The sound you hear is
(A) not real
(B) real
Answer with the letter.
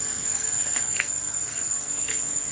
A